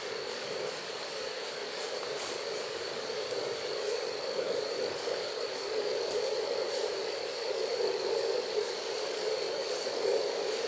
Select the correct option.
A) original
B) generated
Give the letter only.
B